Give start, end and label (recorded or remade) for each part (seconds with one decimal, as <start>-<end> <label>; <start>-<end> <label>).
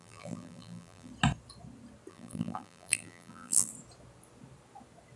0.0-1.1 remade; 1.1-2.1 recorded; 2.1-3.7 remade; 3.7-5.2 recorded